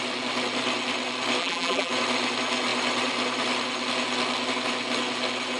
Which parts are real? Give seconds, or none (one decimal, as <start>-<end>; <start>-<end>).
0.0-1.4; 1.9-5.6